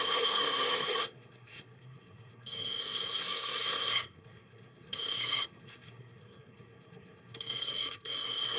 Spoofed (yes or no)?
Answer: yes